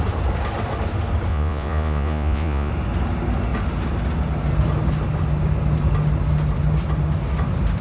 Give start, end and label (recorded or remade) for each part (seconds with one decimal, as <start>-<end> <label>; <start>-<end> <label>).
0.0-1.3 recorded; 1.3-2.7 remade; 2.7-7.8 recorded